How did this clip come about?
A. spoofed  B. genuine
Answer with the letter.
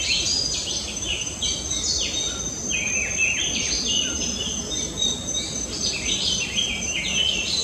B